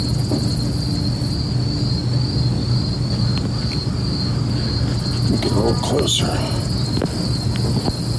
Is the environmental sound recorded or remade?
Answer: recorded